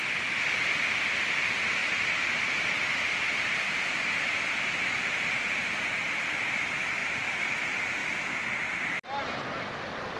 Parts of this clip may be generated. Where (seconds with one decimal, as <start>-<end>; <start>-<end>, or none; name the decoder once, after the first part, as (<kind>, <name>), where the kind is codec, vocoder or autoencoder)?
7.0-7.5 (vocoder, BigVGAN v2)